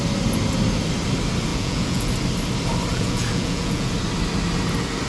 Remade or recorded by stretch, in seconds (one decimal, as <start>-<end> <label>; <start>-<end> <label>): 0.0-1.5 recorded; 1.5-2.1 remade; 2.1-2.9 recorded; 2.9-3.9 remade; 3.9-5.1 recorded